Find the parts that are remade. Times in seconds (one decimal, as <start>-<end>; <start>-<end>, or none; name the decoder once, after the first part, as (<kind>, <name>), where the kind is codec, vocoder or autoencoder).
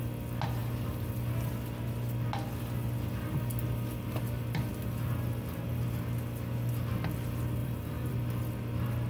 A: 7.6-8.1 (vocoder, BigVGAN v2)